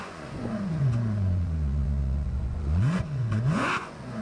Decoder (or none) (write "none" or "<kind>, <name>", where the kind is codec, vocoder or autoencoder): vocoder, Vocos